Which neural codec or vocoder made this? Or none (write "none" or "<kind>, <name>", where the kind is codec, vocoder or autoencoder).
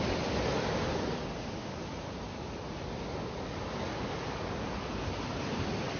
none